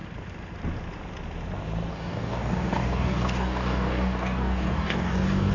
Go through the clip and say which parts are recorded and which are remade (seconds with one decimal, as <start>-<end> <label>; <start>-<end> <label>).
0.0-1.9 recorded; 1.9-5.5 remade